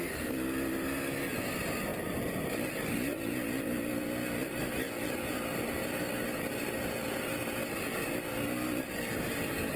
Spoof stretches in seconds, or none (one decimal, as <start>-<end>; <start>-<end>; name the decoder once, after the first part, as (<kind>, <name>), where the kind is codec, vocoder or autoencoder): none